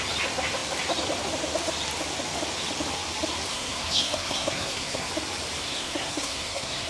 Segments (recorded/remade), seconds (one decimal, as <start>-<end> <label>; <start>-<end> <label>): 0.0-3.5 recorded; 3.5-5.1 remade; 5.1-5.6 recorded; 5.6-6.9 remade